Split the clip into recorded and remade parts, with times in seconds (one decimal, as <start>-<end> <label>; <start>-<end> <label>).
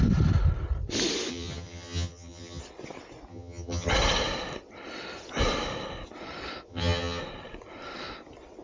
0.0-1.3 recorded; 1.3-2.6 remade; 2.6-3.3 recorded; 3.3-3.9 remade; 3.9-6.7 recorded; 6.7-7.2 remade; 7.2-8.6 recorded